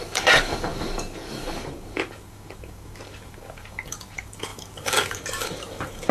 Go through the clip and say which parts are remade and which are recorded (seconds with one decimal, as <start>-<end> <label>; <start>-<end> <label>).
0.0-6.1 remade